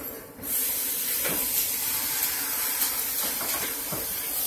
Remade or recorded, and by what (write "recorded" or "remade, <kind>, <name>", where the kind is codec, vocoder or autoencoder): recorded